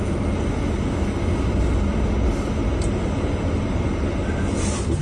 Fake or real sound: real